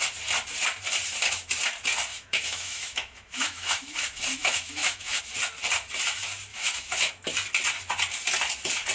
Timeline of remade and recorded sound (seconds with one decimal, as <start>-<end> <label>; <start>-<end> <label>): 0.0-2.1 recorded; 2.1-5.2 remade; 5.2-6.5 recorded; 6.5-7.1 remade; 7.1-8.9 recorded

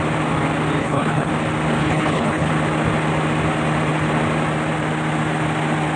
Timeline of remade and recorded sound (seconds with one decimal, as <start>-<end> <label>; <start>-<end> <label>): 0.0-0.8 recorded; 0.8-1.3 remade; 1.3-1.8 recorded; 1.8-2.5 remade; 2.5-6.0 recorded

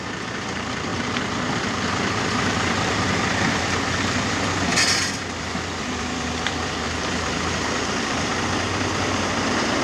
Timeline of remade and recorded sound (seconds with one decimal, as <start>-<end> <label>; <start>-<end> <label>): 0.0-9.8 remade

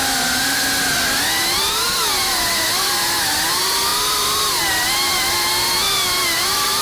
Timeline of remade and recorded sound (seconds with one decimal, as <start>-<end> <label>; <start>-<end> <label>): 0.0-6.8 recorded

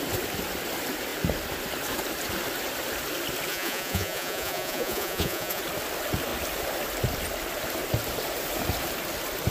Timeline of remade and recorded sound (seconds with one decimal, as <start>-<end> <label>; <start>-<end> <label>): 0.0-3.5 recorded; 3.5-5.6 remade; 5.6-9.5 recorded

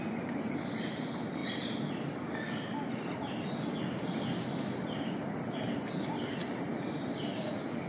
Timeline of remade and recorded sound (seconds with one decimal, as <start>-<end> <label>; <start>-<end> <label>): 0.0-1.4 remade; 1.4-5.8 recorded; 5.8-7.9 remade